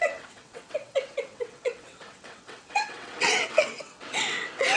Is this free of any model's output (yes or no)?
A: no